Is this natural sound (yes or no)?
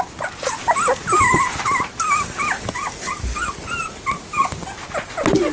yes